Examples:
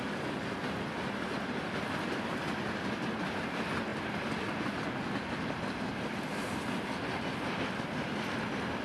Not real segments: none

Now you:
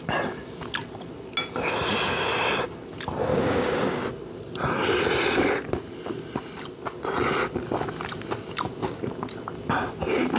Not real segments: 3.3-4.0 (codec, DAC)

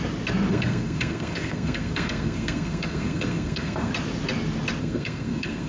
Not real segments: 0.5-3.9 (codec, SNAC); 4.8-5.7

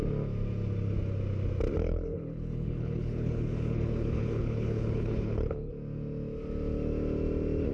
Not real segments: 1.8-5.7 (codec, HILCodec)

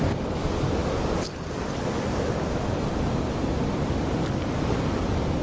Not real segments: none

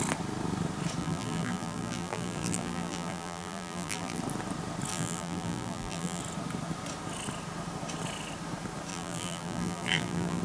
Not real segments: 1.0-4.2 (vocoder, BigVGAN v2); 4.9-6.2; 8.9-10.4